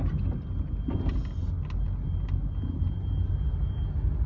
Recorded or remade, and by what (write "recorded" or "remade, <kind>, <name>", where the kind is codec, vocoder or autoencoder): recorded